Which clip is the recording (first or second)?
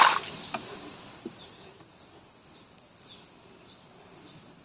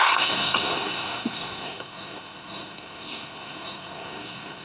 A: first